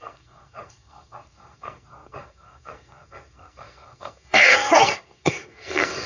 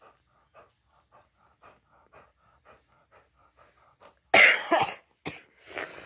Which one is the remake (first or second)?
first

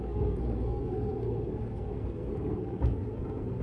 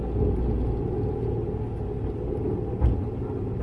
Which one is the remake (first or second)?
first